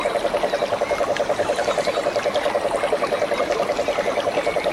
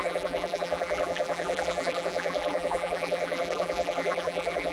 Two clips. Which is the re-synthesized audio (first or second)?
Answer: second